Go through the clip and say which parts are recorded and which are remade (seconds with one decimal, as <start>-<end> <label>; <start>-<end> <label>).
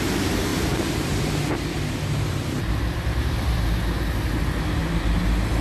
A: 0.0-0.5 recorded; 0.5-3.9 remade; 3.9-5.6 recorded